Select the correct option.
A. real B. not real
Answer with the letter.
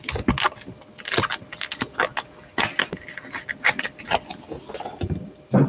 A